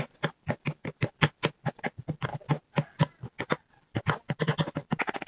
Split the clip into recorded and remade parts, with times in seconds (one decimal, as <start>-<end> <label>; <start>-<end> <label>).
0.0-5.3 recorded